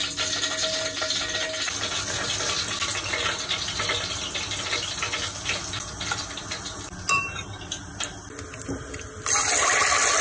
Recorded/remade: recorded